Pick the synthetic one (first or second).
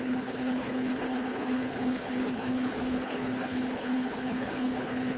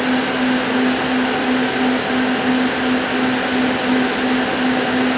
first